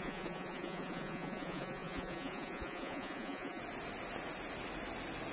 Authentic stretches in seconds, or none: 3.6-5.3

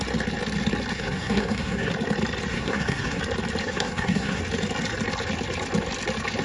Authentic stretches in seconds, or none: 0.0-0.9; 1.9-2.5; 3.2-3.6; 4.4-6.4

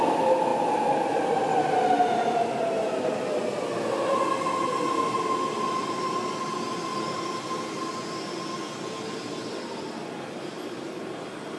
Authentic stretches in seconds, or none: 0.0-11.6

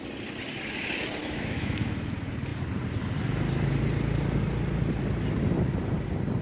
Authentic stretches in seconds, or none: 0.0-1.2; 2.1-6.4

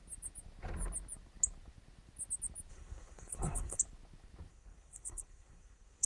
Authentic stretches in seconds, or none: 0.0-2.7; 3.8-4.5

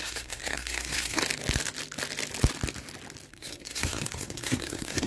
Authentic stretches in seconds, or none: 1.2-3.3

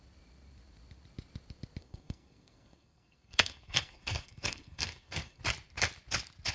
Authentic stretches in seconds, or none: 0.0-1.8; 5.4-6.5

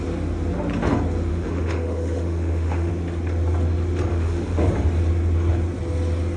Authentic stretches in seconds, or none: 0.0-1.3; 2.9-4.1; 4.7-6.4